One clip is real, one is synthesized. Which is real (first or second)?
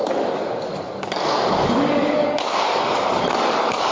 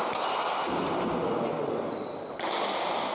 second